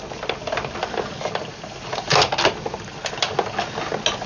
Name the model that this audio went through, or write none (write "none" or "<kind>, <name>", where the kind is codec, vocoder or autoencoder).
none